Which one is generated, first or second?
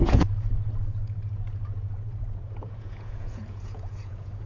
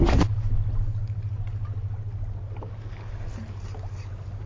first